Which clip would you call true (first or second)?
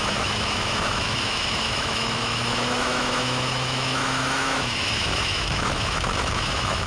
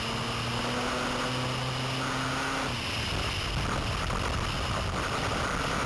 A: second